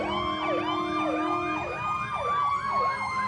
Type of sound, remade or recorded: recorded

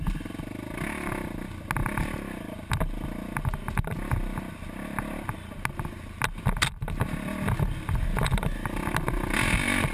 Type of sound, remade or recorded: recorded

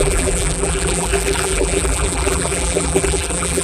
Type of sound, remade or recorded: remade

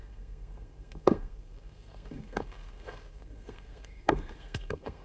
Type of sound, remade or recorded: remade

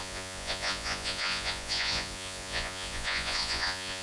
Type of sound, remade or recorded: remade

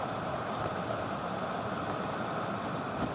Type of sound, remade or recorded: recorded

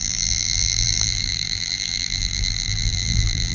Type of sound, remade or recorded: remade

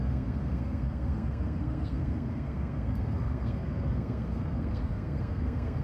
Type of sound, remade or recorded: remade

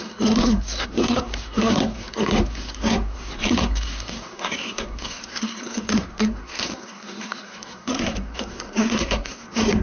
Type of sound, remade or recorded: remade